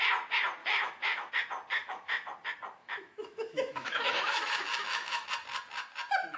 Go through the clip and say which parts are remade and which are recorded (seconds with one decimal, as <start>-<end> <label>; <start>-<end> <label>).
0.0-0.6 recorded; 0.6-1.3 remade; 1.3-1.8 recorded; 1.8-2.3 remade; 2.3-2.8 recorded; 2.8-5.3 remade; 5.3-6.4 recorded